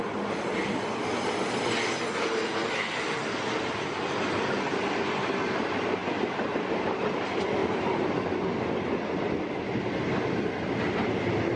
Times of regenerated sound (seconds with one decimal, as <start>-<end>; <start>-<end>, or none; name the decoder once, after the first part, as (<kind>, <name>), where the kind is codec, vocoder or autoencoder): 7.6-8.1 (vocoder, BigVGAN v2)